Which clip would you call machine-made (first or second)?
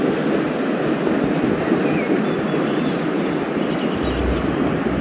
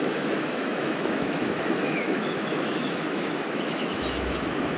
second